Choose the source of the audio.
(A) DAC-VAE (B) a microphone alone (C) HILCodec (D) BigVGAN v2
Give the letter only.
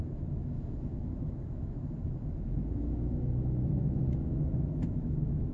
A